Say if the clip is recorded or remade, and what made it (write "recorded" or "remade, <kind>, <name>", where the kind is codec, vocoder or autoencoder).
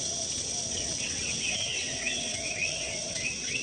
remade, vocoder, WaveNeXt